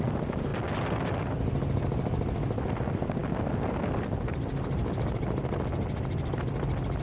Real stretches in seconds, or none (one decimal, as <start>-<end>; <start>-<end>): 0.0-7.0

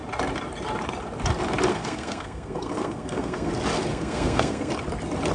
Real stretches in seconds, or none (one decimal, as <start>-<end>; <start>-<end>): 0.0-1.7; 3.5-3.9; 4.7-5.3

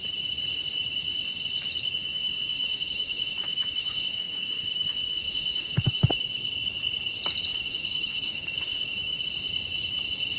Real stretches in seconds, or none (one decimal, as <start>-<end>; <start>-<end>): 0.0-2.0; 6.4-7.5; 9.2-10.4

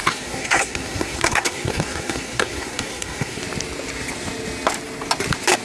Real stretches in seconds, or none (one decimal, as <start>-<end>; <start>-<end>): 3.4-5.6

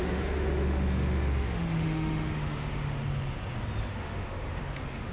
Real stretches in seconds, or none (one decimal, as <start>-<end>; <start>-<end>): 3.0-3.9

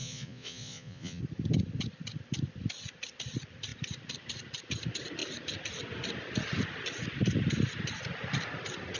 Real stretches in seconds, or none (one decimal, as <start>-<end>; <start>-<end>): 1.2-9.0